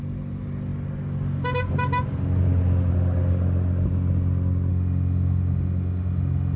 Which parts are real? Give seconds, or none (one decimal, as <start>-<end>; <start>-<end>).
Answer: 0.0-4.7